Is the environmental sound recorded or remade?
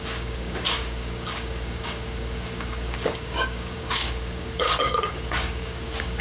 remade